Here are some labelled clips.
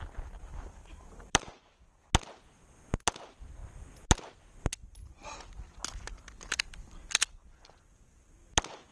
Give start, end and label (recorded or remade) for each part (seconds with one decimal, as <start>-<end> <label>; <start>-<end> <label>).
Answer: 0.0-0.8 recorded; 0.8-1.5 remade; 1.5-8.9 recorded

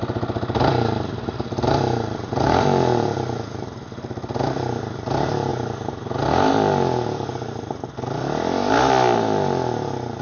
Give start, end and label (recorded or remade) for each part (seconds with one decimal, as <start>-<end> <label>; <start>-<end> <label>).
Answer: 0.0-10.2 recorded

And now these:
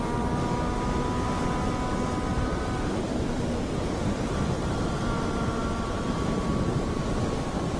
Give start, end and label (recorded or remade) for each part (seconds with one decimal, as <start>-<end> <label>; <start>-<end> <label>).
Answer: 0.0-2.3 recorded; 2.3-3.4 remade; 3.4-4.0 recorded; 4.0-7.1 remade; 7.1-7.8 recorded

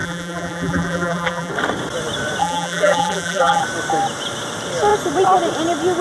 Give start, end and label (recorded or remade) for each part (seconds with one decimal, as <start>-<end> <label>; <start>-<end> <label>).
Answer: 0.0-1.5 remade; 1.5-2.4 recorded; 2.4-3.6 remade; 3.6-6.0 recorded

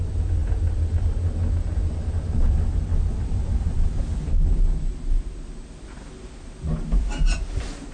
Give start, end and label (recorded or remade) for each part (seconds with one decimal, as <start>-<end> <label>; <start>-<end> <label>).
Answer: 0.0-3.1 recorded; 3.1-4.0 remade; 4.0-7.9 recorded